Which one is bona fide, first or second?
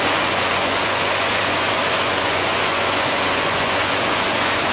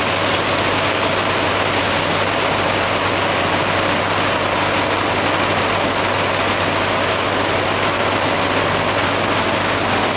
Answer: second